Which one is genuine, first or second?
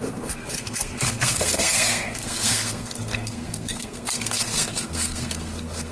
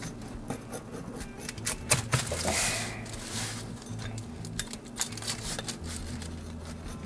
second